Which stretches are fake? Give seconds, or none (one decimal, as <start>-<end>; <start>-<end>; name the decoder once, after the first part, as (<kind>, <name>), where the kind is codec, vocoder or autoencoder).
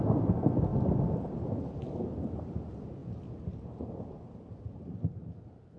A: none